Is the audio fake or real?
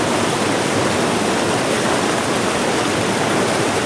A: real